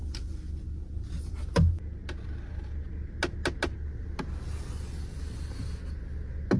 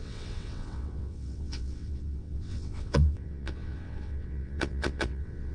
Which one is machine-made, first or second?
second